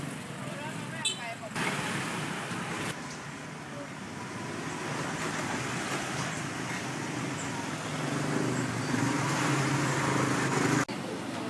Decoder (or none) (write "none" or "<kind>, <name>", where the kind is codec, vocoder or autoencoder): none